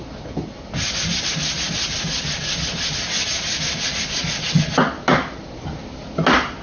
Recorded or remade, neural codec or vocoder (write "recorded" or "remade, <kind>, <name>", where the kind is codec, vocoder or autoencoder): recorded